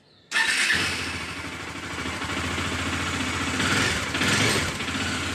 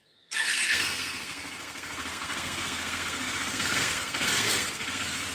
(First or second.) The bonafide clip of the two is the first